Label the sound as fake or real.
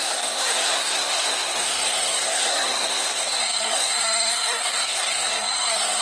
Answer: fake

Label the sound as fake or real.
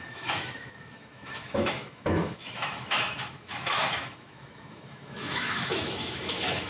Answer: fake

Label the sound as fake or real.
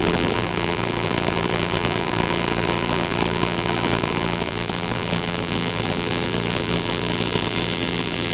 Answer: fake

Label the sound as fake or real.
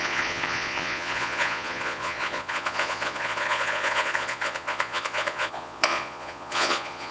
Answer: fake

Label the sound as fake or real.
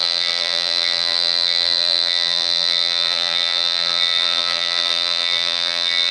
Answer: fake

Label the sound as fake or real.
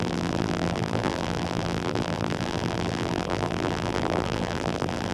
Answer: fake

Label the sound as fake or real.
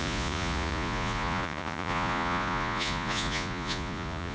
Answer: fake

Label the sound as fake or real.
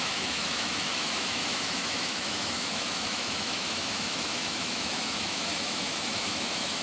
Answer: fake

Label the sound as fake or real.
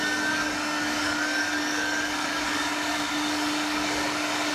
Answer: fake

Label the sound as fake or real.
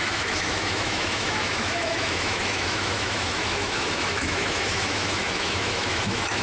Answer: fake